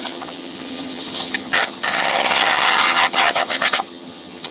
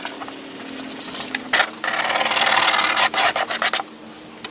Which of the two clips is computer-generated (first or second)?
first